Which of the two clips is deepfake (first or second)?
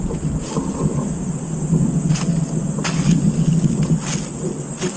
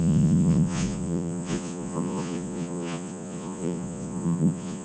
second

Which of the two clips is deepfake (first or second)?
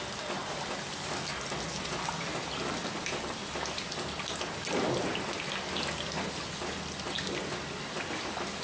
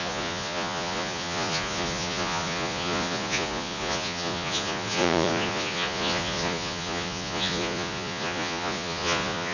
second